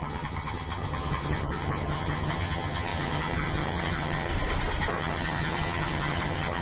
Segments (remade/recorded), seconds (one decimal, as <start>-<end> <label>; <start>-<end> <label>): 0.0-4.3 remade; 4.3-4.9 recorded; 4.9-6.6 remade